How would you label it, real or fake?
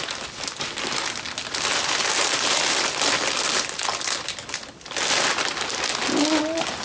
real